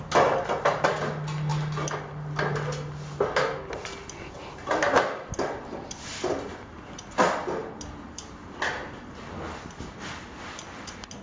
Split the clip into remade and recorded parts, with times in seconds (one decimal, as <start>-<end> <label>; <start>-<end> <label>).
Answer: 0.0-11.2 recorded